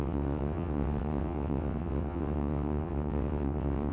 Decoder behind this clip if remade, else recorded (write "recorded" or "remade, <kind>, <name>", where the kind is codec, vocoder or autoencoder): remade, vocoder, WaveNeXt